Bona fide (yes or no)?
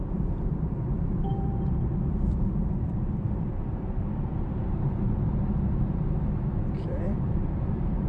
no